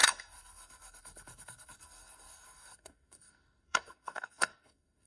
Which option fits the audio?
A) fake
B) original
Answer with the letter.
A